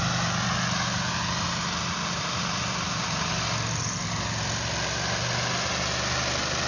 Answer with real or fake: real